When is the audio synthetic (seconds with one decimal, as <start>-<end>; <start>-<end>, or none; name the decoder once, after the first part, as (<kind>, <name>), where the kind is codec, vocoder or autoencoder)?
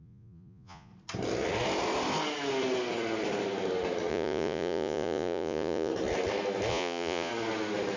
0.0-0.9 (vocoder, Vocos); 4.1-5.9; 6.7-7.3